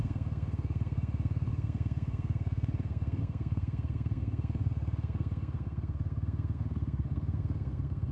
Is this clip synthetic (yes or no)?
yes